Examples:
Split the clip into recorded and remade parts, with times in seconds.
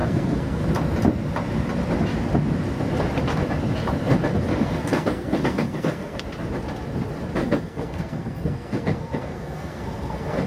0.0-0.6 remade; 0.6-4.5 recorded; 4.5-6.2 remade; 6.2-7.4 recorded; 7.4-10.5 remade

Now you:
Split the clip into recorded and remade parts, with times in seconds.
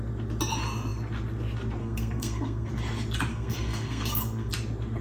0.0-1.8 recorded; 1.8-2.7 remade; 2.7-3.3 recorded; 3.3-4.5 remade; 4.5-5.0 recorded